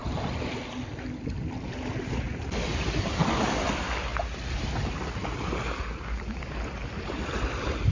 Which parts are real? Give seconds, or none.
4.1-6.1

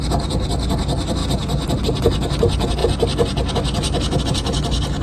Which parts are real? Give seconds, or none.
0.0-5.0